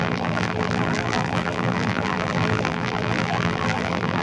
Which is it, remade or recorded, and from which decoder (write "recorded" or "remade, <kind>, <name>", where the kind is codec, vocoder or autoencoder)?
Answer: remade, vocoder, BigVGAN v2